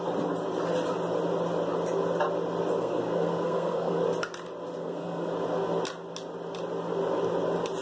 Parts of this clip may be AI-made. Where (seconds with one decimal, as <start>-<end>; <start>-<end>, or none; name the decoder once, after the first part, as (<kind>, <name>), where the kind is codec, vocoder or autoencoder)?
2.8-4.0 (codec, SNAC); 4.8-5.3